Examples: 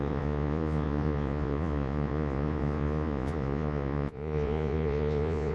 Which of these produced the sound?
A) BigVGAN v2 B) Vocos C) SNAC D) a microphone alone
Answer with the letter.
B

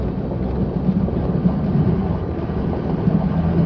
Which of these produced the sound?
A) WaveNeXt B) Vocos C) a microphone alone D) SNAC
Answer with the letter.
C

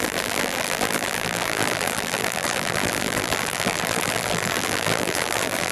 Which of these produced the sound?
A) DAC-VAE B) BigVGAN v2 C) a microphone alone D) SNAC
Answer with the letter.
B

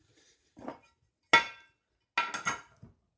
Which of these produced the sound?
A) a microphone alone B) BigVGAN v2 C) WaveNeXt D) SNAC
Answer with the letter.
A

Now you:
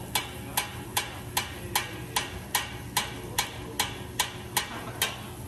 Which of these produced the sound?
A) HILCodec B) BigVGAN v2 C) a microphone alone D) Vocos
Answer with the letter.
C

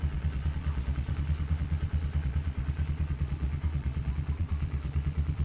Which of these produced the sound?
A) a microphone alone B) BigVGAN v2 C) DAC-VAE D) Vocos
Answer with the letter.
D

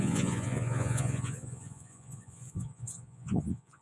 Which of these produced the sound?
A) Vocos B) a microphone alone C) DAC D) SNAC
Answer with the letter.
A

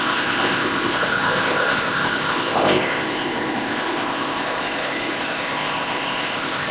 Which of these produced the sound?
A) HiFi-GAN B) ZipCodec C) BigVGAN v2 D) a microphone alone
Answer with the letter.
B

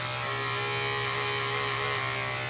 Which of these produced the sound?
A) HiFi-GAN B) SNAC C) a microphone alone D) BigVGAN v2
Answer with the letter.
C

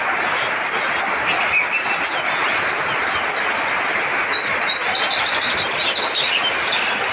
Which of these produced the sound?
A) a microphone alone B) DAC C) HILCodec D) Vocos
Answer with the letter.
A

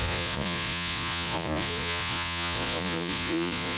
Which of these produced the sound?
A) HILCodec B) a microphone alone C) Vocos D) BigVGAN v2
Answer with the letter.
C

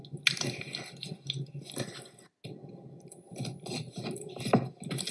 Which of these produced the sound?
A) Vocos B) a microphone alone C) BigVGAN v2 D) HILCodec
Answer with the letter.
B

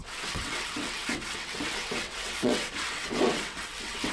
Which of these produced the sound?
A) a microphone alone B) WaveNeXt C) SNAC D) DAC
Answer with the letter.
B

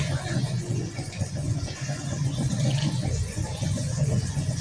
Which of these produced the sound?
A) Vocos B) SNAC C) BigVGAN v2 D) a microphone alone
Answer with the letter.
A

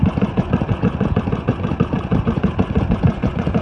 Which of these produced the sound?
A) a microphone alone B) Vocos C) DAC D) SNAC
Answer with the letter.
B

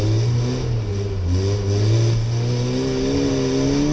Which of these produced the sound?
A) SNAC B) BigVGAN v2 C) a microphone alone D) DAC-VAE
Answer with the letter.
C